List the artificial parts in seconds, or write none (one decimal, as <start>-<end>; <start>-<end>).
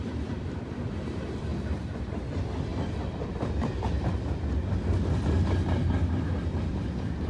0.0-1.5; 2.0-2.7; 6.7-7.3